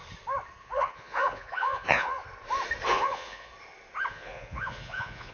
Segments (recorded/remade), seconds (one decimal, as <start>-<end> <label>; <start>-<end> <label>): 0.0-0.6 recorded; 0.6-2.2 remade; 2.2-2.9 recorded; 2.9-3.5 remade; 3.5-4.1 recorded; 4.1-5.3 remade